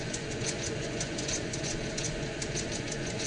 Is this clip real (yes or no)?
no